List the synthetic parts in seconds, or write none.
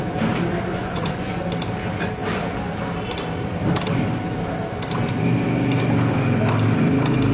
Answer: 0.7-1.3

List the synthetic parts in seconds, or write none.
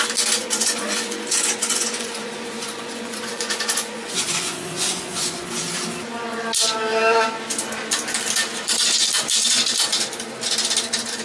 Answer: 0.4-5.6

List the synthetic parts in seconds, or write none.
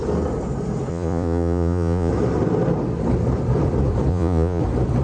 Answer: 0.9-2.1; 4.1-4.6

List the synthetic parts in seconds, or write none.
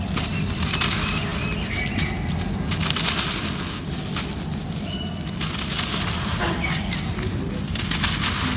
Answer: none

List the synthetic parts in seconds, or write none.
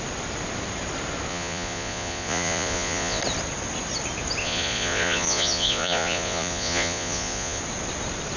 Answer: 1.3-3.2; 4.4-7.6